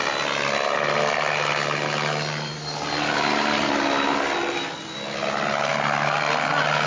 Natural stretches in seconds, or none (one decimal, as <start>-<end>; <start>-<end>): 0.0-6.9